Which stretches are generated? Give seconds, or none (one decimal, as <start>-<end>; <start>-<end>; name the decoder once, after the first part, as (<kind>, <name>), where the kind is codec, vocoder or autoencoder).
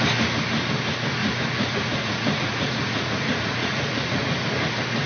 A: 1.2-4.3 (vocoder, Vocos)